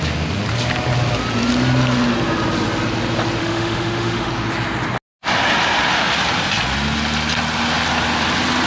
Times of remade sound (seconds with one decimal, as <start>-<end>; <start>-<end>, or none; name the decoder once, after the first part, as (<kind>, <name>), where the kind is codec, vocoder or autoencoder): 3.4-4.3 (autoencoder, DAC-VAE)